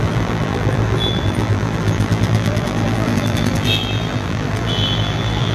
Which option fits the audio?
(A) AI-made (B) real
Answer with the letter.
A